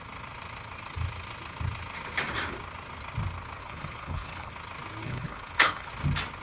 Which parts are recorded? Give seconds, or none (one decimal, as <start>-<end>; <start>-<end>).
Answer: 0.0-3.6; 4.5-5.0; 5.9-6.4